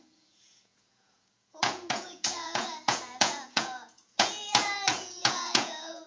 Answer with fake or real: fake